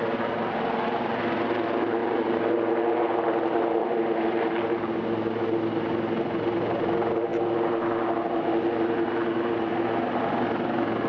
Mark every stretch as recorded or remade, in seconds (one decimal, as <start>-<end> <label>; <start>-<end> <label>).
0.0-11.1 recorded